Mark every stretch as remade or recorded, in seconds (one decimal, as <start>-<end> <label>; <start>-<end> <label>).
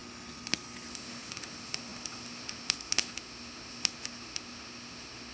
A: 0.0-0.9 recorded; 0.9-5.3 remade